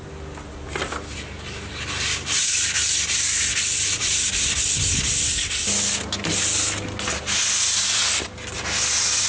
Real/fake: real